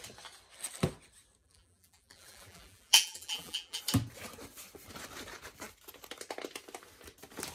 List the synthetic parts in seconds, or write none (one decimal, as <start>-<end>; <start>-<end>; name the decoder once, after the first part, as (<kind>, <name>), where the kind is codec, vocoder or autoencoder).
1.4-3.8 (vocoder, BigVGAN v2)